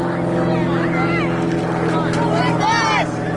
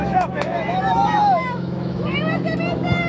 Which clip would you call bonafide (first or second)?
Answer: first